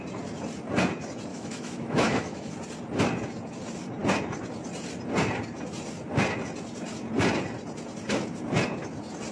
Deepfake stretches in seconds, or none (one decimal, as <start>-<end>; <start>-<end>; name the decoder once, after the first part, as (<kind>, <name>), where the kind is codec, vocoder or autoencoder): 1.3-2.5 (autoencoder, DAC-VAE)